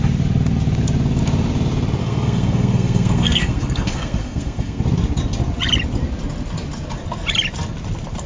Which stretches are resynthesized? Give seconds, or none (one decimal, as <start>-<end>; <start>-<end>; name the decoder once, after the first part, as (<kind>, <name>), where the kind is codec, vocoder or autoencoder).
2.0-4.8 (codec, SNAC)